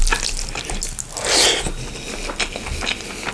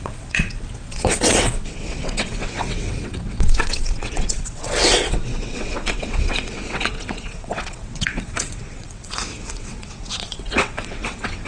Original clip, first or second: first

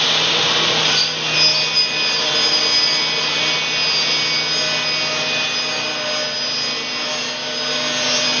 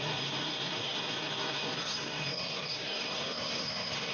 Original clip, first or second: first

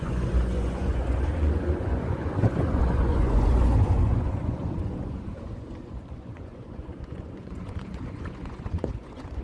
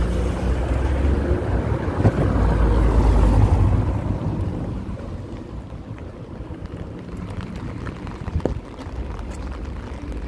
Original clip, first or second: second